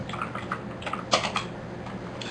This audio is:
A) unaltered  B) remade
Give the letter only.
A